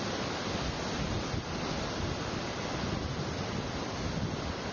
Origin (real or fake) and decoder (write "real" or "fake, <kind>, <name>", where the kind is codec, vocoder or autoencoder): real